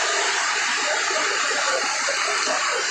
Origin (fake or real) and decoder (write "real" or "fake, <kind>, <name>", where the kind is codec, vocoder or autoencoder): real